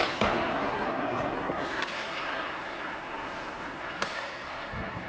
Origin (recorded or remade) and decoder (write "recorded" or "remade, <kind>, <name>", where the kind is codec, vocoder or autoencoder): remade, codec, SNAC